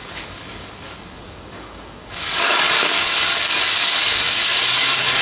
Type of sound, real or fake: fake